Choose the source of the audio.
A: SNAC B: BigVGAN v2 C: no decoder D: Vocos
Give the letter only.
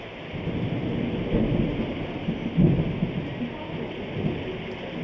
C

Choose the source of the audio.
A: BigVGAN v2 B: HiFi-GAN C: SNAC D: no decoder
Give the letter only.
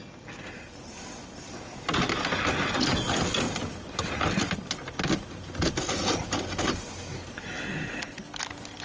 D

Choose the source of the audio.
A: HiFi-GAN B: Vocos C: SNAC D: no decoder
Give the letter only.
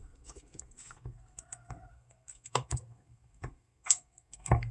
C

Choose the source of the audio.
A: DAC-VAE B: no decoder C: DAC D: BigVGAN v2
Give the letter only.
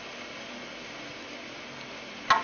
B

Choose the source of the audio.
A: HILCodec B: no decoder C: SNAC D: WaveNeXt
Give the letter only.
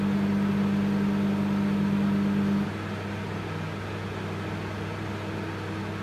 B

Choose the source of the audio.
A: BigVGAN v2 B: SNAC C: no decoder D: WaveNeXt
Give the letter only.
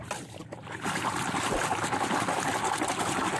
C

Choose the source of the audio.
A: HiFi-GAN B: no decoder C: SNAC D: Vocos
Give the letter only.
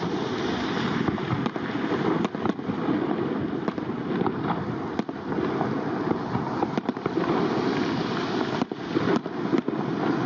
B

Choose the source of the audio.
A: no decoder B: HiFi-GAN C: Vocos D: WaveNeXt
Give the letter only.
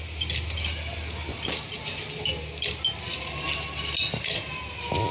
A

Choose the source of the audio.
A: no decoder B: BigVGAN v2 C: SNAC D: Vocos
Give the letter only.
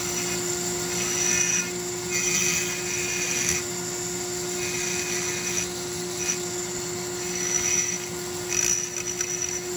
A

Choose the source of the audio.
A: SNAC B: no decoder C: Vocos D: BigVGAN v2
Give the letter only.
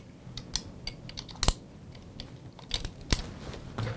B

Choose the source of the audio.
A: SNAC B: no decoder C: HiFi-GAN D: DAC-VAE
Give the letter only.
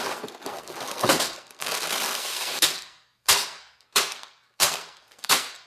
A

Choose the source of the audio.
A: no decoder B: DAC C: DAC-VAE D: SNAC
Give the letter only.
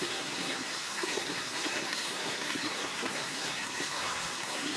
D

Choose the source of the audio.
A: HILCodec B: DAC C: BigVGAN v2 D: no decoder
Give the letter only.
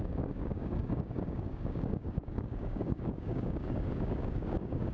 B